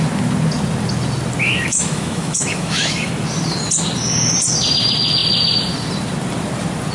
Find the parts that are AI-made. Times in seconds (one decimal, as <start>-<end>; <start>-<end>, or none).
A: 1.4-3.1